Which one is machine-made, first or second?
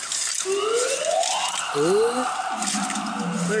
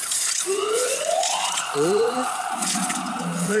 second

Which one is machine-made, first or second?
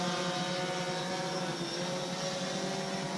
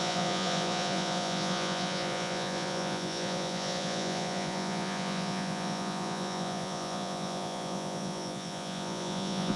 second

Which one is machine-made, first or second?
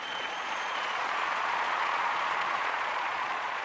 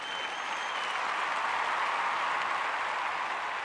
first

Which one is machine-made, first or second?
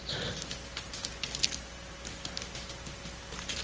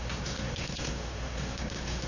second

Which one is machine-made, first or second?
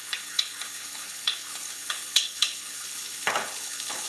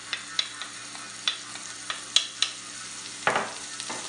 first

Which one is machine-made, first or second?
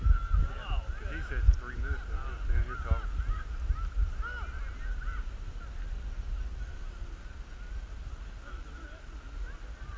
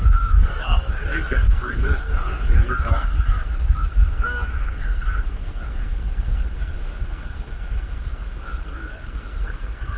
second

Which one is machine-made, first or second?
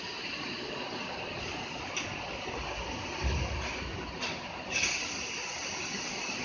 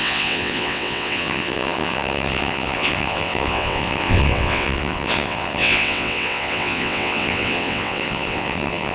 second